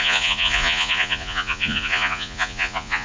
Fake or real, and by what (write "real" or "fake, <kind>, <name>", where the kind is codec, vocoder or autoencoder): fake, vocoder, Vocos